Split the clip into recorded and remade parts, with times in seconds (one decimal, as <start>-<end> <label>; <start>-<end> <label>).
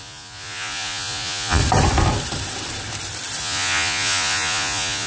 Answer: 0.0-1.6 remade; 1.6-3.4 recorded; 3.4-5.1 remade